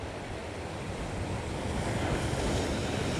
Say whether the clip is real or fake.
real